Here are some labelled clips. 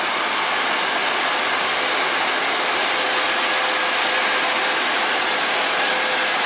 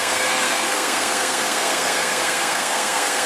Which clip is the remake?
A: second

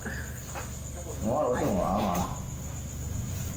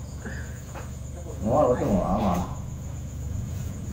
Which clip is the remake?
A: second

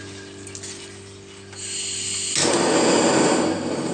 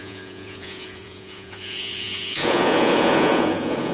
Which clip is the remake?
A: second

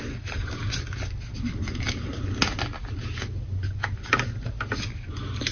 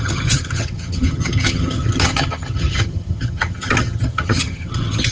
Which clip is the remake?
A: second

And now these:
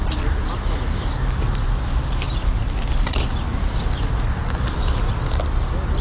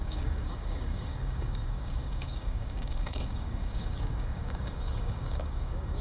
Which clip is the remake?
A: second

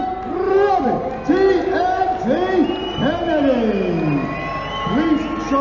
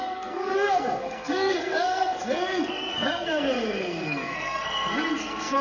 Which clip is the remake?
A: second